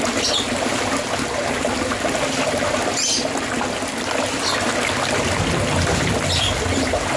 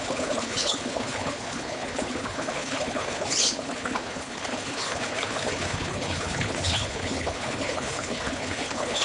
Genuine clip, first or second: first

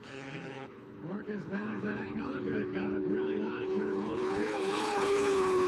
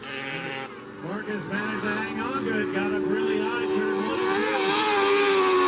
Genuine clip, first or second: second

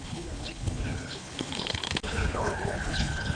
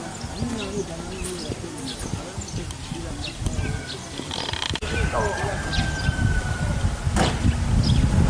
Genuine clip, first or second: second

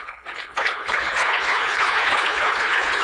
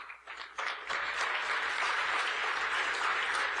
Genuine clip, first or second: second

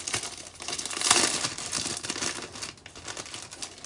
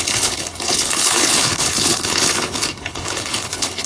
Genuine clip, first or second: first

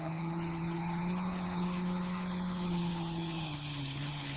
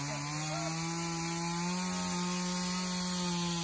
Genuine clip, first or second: second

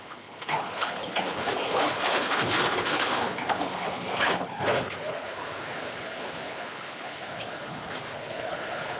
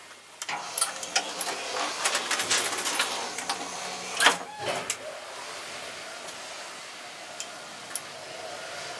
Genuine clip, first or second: second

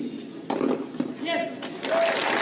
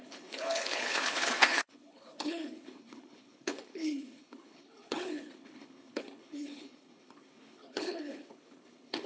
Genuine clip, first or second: first